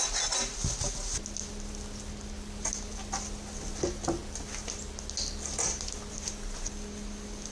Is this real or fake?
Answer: real